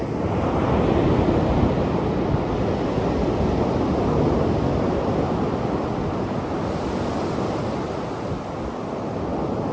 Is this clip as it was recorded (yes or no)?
yes